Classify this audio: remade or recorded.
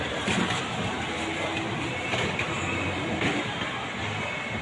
recorded